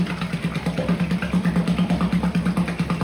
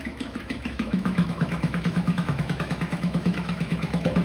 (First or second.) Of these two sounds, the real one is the first